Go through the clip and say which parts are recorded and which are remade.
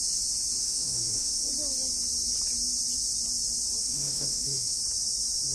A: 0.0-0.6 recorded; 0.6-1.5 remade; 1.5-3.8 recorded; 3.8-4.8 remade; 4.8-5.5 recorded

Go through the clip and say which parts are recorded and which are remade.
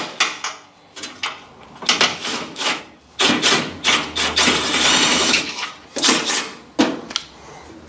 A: 0.0-2.1 recorded; 2.1-2.8 remade; 2.8-5.1 recorded; 5.1-5.7 remade; 5.7-7.9 recorded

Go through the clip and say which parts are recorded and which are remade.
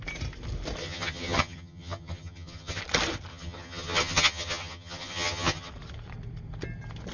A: 0.0-0.8 recorded; 0.8-2.8 remade; 2.8-3.3 recorded; 3.3-5.7 remade; 5.7-7.1 recorded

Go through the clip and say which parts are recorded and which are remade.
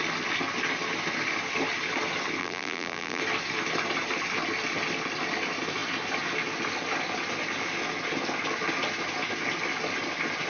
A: 0.0-2.4 recorded; 2.4-3.2 remade; 3.2-10.5 recorded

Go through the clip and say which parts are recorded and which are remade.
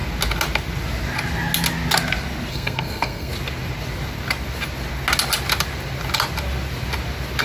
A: 0.0-2.5 recorded; 2.5-3.3 remade; 3.3-7.4 recorded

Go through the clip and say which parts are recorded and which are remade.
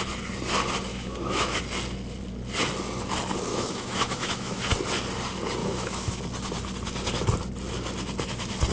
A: 0.0-0.9 recorded; 0.9-1.6 remade; 1.6-3.5 recorded; 3.5-4.6 remade; 4.6-5.6 recorded; 5.6-6.2 remade; 6.2-8.7 recorded